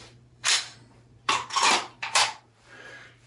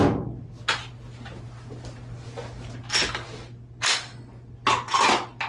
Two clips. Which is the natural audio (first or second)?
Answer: second